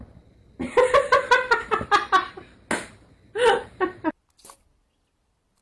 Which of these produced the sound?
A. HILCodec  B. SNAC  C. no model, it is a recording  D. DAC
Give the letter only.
C